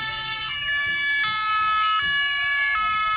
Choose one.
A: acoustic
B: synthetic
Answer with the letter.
A